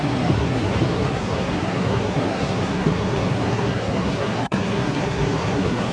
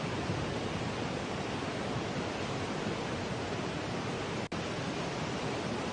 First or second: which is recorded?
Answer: second